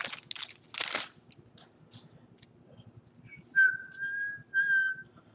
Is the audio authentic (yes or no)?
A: yes